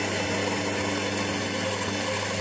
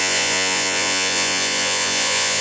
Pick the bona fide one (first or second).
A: first